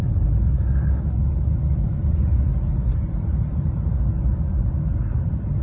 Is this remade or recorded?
recorded